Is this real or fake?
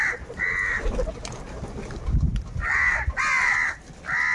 real